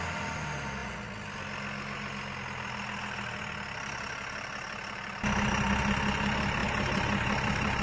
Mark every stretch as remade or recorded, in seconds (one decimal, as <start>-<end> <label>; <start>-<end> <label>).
0.0-6.6 recorded; 6.6-7.8 remade